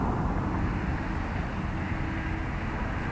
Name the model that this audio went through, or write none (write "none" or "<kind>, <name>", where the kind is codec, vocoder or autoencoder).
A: none